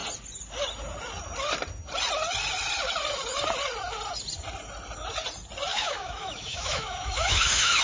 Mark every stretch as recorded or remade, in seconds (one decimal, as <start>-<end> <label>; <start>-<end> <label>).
0.0-5.7 recorded; 5.7-7.8 remade